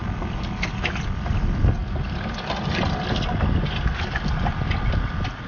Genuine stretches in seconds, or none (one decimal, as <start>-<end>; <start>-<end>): 0.0-5.5

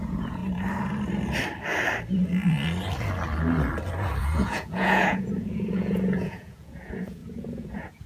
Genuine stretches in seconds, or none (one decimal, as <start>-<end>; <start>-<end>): 0.4-4.2